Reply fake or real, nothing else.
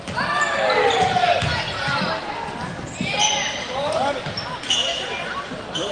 real